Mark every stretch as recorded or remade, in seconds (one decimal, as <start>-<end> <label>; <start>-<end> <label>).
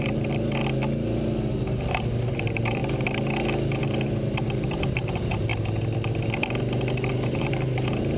0.0-0.6 remade; 0.6-2.3 recorded; 2.3-2.8 remade; 2.8-3.8 recorded; 3.8-5.5 remade; 5.5-7.3 recorded; 7.3-8.2 remade